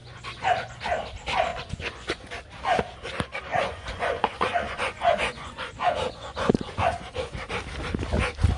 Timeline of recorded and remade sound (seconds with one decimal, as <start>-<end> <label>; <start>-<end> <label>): 0.0-0.8 remade; 0.8-1.5 recorded; 1.5-2.3 remade; 2.3-3.5 recorded; 3.5-7.4 remade; 7.4-8.6 recorded